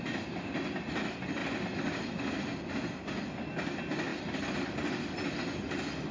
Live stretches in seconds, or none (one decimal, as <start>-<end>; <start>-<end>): 0.0-6.1